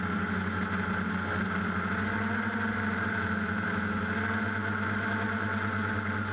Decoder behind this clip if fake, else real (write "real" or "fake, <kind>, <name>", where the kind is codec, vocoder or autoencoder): real